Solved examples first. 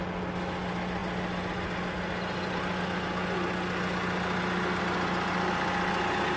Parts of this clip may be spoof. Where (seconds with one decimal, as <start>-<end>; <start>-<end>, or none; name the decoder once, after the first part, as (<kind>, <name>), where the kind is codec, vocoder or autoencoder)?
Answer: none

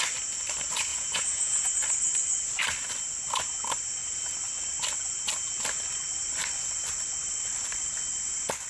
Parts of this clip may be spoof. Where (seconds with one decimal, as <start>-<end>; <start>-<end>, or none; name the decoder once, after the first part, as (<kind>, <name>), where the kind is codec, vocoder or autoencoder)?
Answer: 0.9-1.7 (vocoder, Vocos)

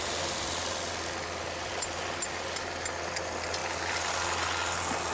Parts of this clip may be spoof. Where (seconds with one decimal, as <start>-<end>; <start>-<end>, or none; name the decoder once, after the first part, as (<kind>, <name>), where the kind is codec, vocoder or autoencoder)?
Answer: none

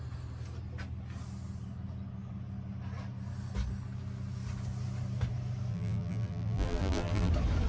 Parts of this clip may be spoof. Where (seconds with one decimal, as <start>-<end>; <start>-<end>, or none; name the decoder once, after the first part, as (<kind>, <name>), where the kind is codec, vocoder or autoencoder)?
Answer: 5.7-7.3 (vocoder, BigVGAN v2)